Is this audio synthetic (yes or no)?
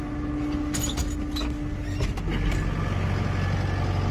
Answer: no